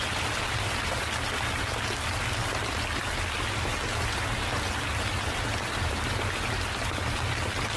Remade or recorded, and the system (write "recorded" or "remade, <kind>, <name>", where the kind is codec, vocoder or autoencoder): recorded